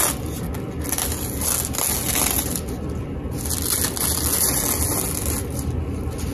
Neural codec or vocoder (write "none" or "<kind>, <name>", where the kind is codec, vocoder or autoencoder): none